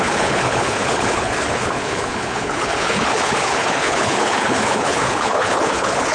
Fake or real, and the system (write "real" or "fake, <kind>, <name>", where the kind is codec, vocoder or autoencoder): fake, codec, HILCodec